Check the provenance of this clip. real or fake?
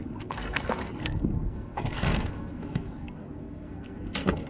fake